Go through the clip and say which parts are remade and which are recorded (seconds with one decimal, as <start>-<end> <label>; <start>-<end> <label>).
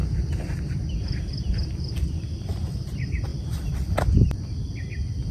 0.0-1.6 recorded; 1.6-2.5 remade; 2.5-3.3 recorded; 3.3-4.4 remade; 4.4-5.3 recorded